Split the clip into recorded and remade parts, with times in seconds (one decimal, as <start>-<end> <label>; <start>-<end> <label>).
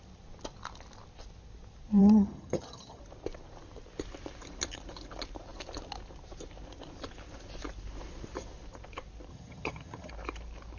0.0-2.0 recorded; 2.0-3.0 remade; 3.0-9.3 recorded; 9.3-10.1 remade; 10.1-10.8 recorded